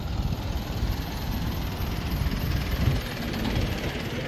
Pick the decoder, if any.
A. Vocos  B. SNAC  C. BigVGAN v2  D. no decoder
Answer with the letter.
C